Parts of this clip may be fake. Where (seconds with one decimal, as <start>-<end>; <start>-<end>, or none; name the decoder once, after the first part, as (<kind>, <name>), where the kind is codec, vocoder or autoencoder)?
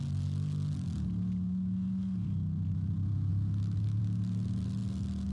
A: none